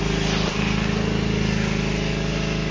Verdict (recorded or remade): recorded